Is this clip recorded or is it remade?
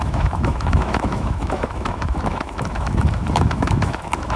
remade